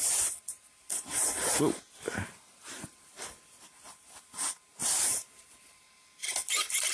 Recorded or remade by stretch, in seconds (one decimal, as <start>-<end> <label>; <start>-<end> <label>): 0.0-6.9 recorded